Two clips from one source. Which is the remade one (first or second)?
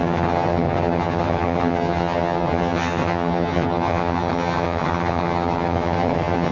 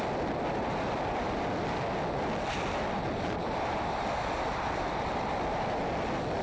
first